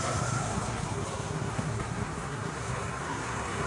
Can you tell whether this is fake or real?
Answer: fake